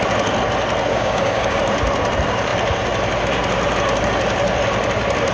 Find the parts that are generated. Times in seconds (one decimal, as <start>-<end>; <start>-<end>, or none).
0.9-1.6